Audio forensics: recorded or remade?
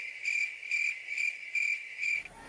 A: recorded